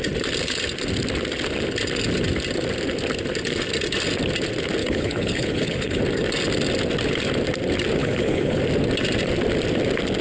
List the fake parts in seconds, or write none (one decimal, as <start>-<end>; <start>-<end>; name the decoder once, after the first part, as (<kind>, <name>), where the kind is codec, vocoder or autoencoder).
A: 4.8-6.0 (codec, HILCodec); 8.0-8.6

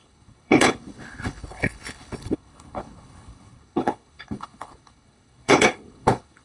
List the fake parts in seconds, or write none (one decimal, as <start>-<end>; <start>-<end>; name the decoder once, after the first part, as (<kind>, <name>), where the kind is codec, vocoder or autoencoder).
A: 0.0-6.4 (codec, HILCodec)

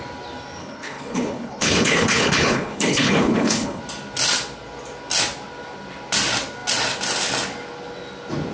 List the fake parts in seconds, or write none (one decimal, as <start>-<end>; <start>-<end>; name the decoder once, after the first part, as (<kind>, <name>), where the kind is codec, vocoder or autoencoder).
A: 0.6-3.8 (codec, HILCodec)